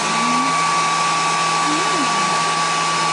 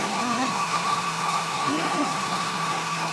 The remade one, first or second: second